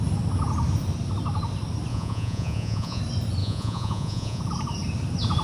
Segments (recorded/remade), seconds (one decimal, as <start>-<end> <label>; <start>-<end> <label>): 0.0-1.9 recorded; 1.9-3.0 remade; 3.0-3.4 recorded; 3.4-4.4 remade; 4.4-5.4 recorded

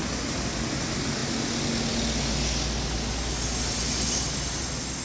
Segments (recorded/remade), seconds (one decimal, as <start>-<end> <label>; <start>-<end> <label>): 0.0-5.0 recorded